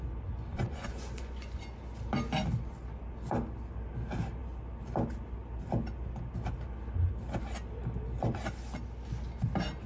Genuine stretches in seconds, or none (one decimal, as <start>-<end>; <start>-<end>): 0.0-0.5; 1.6-9.9